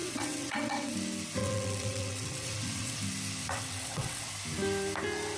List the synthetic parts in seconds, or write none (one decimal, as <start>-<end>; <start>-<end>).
0.0-0.9; 1.4-3.0; 3.4-4.3